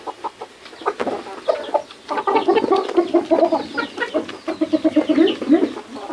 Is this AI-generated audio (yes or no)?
no